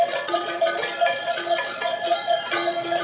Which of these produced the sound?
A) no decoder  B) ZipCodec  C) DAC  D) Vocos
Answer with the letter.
D